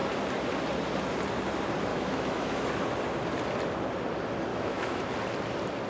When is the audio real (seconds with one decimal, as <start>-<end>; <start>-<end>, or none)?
0.0-1.9; 2.7-4.5; 5.0-5.9